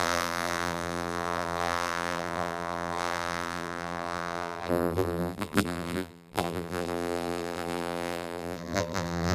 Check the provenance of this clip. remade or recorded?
remade